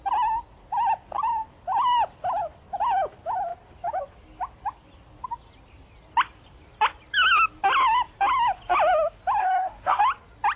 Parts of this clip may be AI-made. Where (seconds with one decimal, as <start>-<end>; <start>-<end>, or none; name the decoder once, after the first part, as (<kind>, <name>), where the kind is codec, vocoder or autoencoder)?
9.4-10.0 (codec, SNAC)